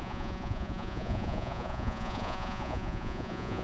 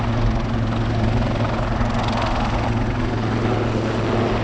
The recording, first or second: second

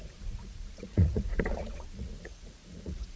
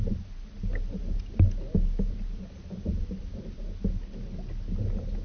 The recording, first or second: second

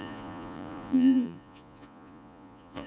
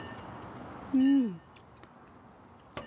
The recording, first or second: second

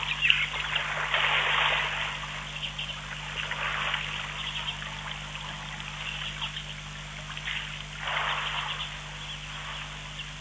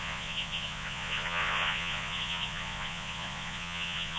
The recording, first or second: first